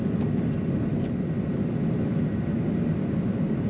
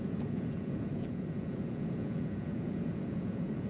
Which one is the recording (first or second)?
first